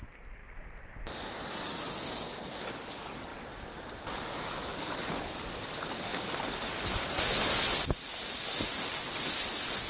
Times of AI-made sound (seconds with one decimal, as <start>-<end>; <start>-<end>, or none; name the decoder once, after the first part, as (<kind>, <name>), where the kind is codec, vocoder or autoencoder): 6.1-7.6 (vocoder, BigVGAN v2)